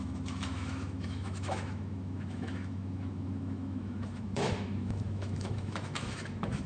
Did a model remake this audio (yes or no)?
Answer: yes